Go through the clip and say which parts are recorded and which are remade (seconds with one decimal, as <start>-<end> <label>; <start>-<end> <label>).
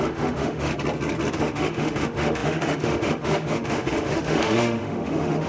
0.0-0.7 remade; 0.7-1.3 recorded; 1.3-5.5 remade